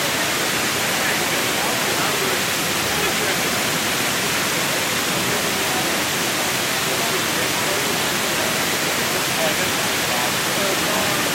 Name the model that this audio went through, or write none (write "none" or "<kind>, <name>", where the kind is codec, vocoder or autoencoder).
none